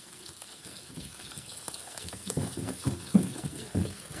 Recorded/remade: remade